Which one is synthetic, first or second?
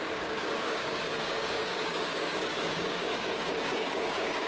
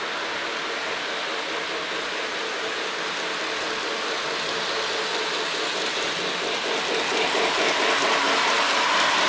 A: first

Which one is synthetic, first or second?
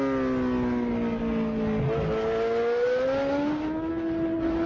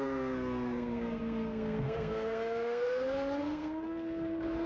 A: second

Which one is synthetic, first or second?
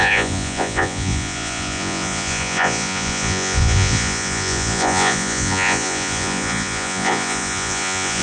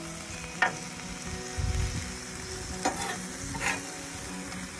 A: first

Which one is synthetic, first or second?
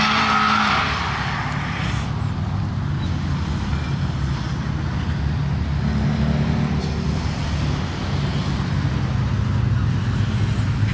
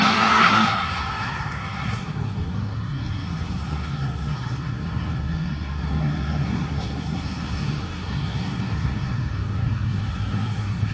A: second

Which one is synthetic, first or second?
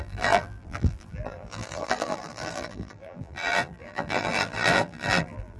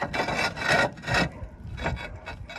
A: first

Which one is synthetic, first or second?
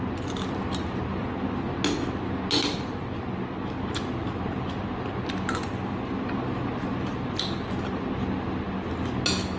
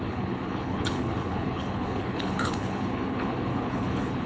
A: second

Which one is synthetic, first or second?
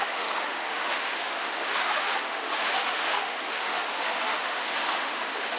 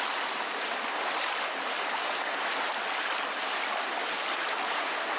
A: first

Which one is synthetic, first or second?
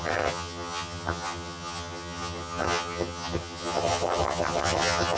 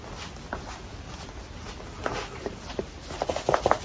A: first